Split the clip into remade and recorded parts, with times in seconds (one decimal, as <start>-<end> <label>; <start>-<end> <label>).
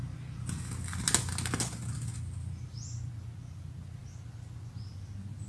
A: 0.0-5.5 recorded